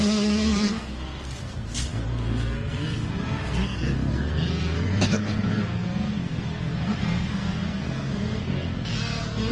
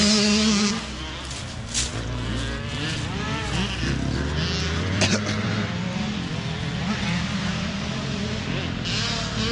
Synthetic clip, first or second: first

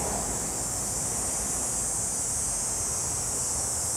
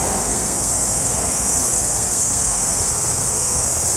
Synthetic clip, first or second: second